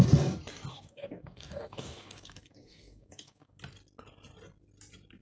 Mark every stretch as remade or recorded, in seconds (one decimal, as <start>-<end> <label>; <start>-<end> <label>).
0.0-0.7 recorded; 0.7-3.6 remade; 3.6-5.2 recorded